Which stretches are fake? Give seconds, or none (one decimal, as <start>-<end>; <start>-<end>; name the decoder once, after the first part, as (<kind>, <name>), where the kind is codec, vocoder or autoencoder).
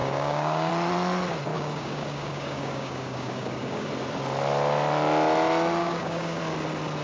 0.0-0.7 (codec, DAC); 1.5-3.9; 5.8-6.4